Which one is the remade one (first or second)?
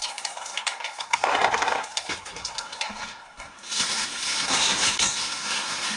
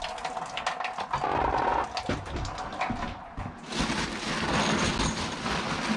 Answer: first